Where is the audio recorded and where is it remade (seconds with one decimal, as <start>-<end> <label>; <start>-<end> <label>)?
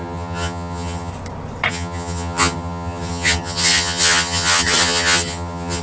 0.0-1.1 remade; 1.1-1.7 recorded; 1.7-5.8 remade